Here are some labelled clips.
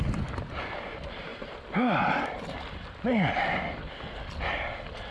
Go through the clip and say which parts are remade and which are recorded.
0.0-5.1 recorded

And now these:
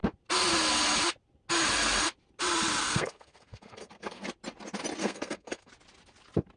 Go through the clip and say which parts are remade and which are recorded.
0.0-2.8 recorded; 2.8-4.2 remade; 4.2-5.0 recorded; 5.0-5.7 remade; 5.7-6.6 recorded

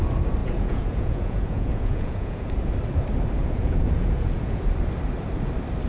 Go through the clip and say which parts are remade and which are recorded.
0.0-0.4 recorded; 0.4-2.7 remade; 2.7-3.4 recorded; 3.4-4.8 remade; 4.8-5.9 recorded

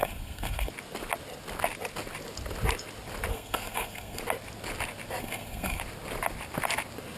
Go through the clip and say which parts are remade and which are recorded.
0.0-0.7 remade; 0.7-3.3 recorded; 3.3-4.2 remade; 4.2-5.2 recorded; 5.2-5.8 remade; 5.8-7.2 recorded

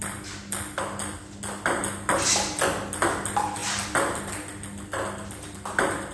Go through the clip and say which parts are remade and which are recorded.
0.0-6.1 recorded

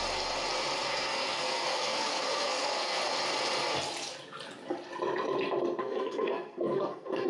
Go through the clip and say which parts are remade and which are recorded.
0.0-0.9 recorded; 0.9-3.0 remade; 3.0-5.8 recorded; 5.8-7.3 remade

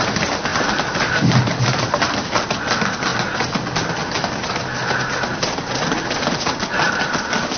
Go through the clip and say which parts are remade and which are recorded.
0.0-7.6 recorded